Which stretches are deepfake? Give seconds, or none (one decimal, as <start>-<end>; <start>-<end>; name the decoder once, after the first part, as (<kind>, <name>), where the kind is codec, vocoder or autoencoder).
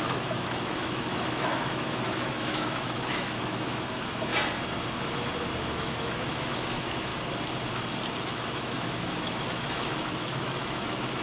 0.0-4.3 (autoencoder, DAC-VAE); 5.6-7.1; 8.2-11.2